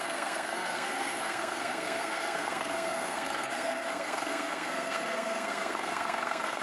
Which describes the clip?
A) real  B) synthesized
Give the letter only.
B